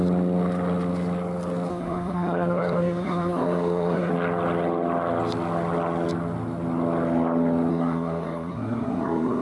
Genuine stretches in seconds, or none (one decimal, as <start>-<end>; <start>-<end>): 0.0-1.7; 4.1-7.7